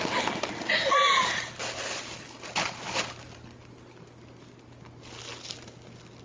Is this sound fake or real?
real